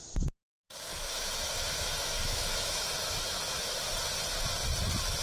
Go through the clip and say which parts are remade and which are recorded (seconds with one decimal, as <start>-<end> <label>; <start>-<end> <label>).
0.0-0.9 recorded; 0.9-3.8 remade; 3.8-5.2 recorded